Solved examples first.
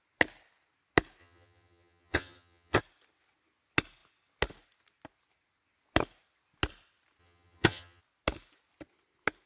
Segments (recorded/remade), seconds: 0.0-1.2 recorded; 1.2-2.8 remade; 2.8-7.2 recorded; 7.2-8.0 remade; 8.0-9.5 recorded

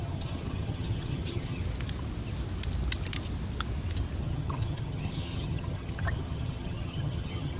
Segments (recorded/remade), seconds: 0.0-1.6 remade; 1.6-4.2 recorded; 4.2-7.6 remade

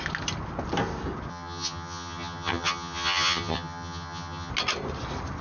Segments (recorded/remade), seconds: 0.0-1.3 recorded; 1.3-4.5 remade; 4.5-5.4 recorded

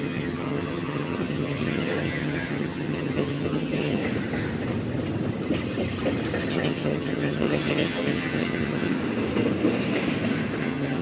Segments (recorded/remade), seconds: 0.0-4.0 remade; 4.0-6.5 recorded; 6.5-9.0 remade; 9.0-10.6 recorded; 10.6-11.0 remade

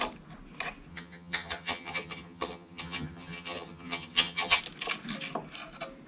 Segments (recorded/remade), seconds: 0.0-0.9 recorded; 0.9-4.6 remade; 4.6-6.1 recorded

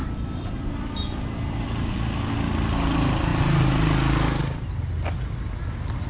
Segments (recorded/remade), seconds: 0.0-6.1 recorded